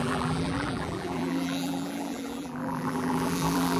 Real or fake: fake